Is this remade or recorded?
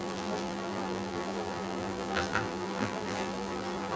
remade